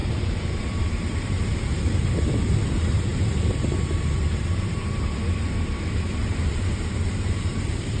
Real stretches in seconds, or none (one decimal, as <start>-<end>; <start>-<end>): 2.6-3.1